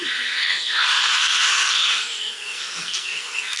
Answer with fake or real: fake